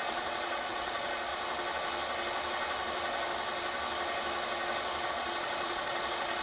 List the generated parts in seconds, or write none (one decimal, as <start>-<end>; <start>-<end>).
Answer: 0.0-1.3; 5.1-6.4